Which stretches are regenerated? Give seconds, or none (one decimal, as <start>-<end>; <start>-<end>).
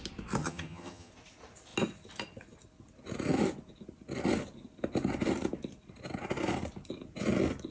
0.4-1.1